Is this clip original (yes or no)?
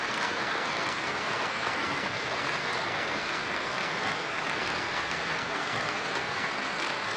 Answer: no